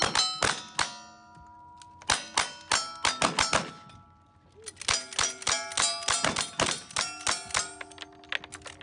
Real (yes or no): yes